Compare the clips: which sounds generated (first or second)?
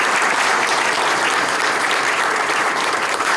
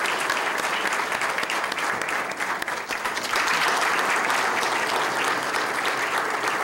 first